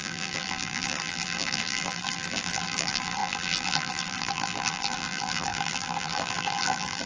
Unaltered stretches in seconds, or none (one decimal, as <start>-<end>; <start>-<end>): none